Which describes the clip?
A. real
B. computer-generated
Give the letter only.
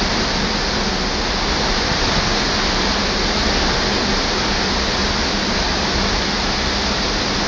A